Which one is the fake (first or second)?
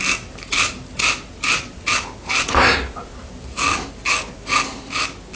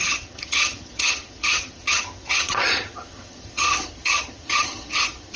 second